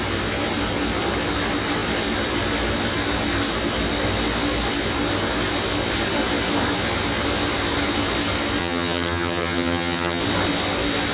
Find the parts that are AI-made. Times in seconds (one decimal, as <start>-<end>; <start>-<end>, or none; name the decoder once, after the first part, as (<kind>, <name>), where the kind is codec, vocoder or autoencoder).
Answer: 8.6-10.2 (vocoder, HiFi-GAN)

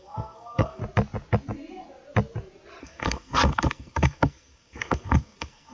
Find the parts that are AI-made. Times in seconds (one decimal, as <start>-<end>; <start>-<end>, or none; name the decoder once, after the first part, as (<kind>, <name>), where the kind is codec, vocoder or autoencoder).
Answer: 0.0-0.8 (codec, SNAC); 2.8-5.7

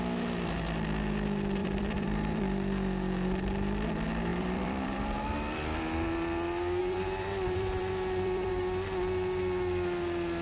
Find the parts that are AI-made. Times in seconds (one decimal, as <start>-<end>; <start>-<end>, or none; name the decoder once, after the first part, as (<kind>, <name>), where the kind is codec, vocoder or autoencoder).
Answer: 1.6-2.4 (vocoder, BigVGAN v2); 4.3-5.8; 6.8-8.5

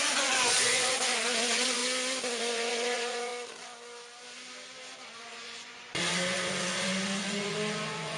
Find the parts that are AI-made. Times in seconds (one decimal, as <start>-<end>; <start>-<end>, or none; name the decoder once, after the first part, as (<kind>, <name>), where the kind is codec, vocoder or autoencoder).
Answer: 0.0-1.8 (vocoder, Vocos); 2.4-3.3; 5.2-8.2

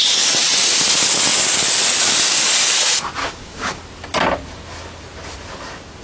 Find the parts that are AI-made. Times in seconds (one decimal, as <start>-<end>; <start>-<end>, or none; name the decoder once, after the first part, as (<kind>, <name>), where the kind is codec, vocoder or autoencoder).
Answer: 3.2-3.8 (codec, DAC)

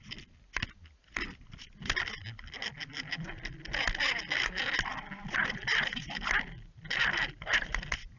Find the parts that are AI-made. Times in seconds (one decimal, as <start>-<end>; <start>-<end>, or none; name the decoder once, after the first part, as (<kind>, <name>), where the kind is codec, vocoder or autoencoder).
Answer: none

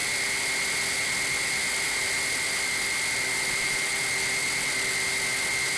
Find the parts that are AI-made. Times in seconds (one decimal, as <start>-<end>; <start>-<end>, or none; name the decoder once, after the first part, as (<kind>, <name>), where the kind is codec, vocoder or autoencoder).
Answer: 3.5-3.9 (vocoder, BigVGAN v2)

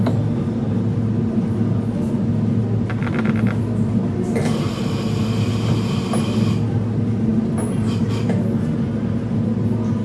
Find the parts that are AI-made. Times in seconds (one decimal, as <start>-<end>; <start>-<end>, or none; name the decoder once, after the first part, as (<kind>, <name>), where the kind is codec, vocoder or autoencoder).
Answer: none